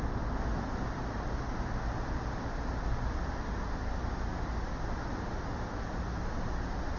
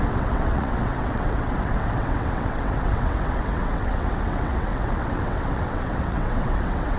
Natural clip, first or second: first